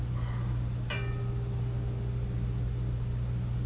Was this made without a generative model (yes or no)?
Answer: yes